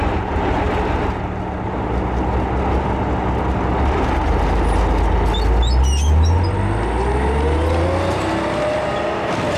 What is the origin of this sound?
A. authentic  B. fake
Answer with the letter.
A